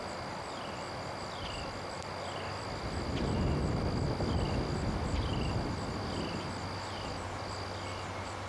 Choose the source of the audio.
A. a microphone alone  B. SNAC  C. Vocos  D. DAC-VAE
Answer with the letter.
A